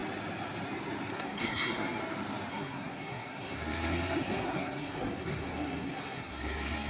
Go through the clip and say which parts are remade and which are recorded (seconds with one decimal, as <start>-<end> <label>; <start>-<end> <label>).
0.0-1.1 recorded; 1.1-2.0 remade; 2.0-2.5 recorded; 2.5-6.9 remade